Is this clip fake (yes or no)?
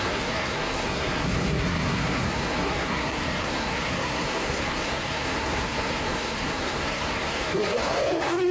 yes